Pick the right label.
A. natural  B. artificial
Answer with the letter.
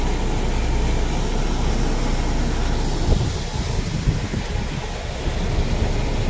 A